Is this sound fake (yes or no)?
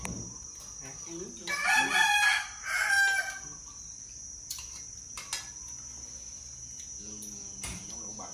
no